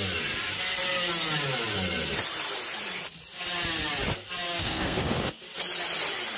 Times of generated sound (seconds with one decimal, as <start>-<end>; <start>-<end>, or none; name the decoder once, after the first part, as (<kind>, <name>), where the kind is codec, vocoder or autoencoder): 4.5-5.4 (codec, SNAC)